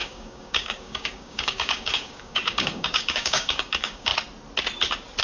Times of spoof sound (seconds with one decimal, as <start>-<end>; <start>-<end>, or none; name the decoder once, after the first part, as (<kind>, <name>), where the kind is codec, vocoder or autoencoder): 0.0-4.1 (codec, DAC)